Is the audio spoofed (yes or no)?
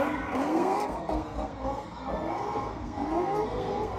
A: yes